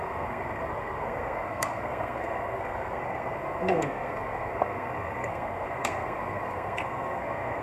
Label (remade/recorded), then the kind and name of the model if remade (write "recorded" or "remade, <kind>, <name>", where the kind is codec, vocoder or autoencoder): remade, codec, SNAC